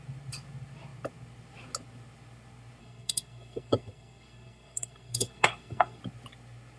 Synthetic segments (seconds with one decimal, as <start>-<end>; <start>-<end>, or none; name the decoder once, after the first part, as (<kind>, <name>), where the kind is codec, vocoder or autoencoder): 2.8-6.0 (codec, SNAC)